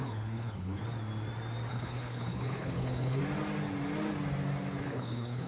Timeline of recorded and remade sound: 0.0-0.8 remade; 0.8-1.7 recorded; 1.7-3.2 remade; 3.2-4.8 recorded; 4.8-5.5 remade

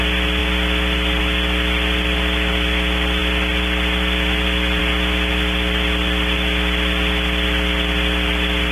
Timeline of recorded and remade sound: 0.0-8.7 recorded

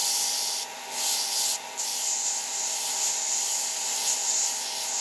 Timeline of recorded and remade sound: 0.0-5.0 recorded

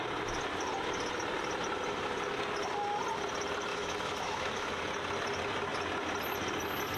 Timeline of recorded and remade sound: 0.0-3.7 recorded; 3.7-4.8 remade; 4.8-7.0 recorded

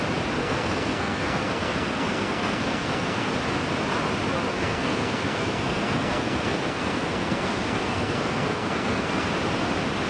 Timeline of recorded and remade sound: 0.0-0.4 recorded; 0.4-3.3 remade; 3.3-4.5 recorded; 4.5-9.3 remade; 9.3-10.1 recorded

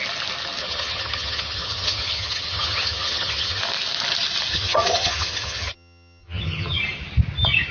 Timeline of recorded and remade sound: 0.0-0.6 recorded; 0.6-3.6 remade; 3.6-4.5 recorded; 4.5-6.8 remade; 6.8-7.7 recorded